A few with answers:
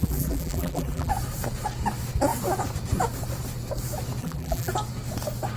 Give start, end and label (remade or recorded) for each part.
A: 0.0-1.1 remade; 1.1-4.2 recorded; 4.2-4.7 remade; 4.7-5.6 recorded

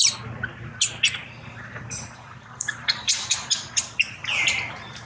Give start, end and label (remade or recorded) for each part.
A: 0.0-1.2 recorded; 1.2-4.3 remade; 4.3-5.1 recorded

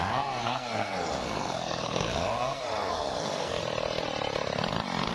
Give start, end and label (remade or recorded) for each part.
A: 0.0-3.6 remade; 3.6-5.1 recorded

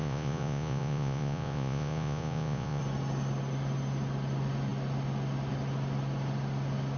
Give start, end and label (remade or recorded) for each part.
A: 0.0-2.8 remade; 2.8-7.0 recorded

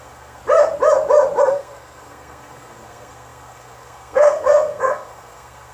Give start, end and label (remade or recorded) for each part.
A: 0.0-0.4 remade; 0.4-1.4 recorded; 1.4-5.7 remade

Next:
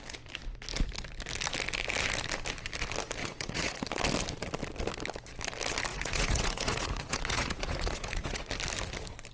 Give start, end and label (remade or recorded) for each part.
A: 0.0-3.2 recorded; 3.2-3.8 remade; 3.8-5.9 recorded; 5.9-8.5 remade; 8.5-9.3 recorded

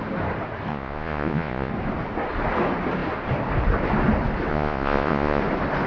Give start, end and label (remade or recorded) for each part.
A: 0.0-0.7 recorded; 0.7-1.7 remade; 1.7-4.5 recorded; 4.5-5.4 remade; 5.4-5.9 recorded

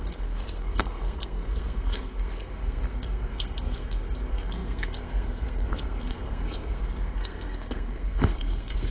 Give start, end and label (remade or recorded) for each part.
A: 0.0-8.9 remade